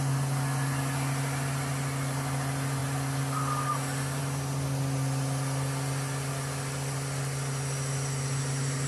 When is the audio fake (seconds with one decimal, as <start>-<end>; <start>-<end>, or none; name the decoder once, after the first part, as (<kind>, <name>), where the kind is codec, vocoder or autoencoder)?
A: none